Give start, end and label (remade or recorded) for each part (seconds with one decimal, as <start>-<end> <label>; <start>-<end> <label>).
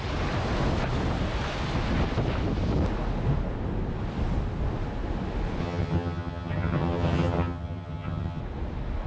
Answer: 0.0-5.6 recorded; 5.6-8.4 remade; 8.4-9.1 recorded